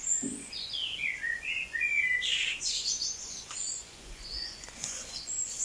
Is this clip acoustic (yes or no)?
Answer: no